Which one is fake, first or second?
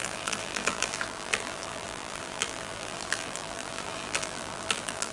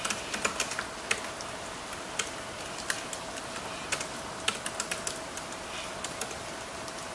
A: first